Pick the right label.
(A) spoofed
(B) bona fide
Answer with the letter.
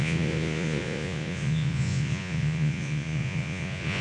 A